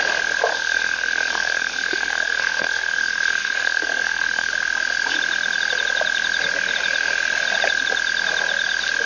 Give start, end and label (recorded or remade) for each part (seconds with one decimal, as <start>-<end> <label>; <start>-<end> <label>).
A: 0.0-0.5 recorded; 0.5-4.5 remade; 4.5-9.1 recorded